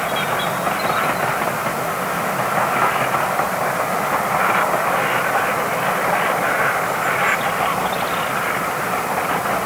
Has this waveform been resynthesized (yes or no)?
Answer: no